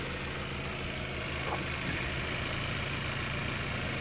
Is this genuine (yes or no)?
yes